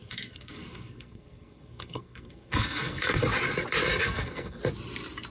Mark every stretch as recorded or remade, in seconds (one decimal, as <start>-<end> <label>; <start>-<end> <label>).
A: 0.0-3.2 remade; 3.2-4.0 recorded; 4.0-4.6 remade; 4.6-5.3 recorded